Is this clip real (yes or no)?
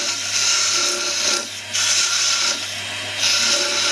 yes